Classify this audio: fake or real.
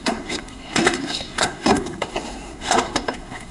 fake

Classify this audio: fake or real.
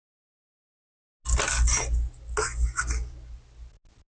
real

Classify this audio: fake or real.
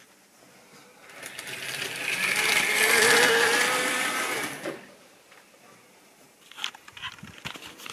real